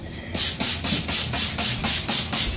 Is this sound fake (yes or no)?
no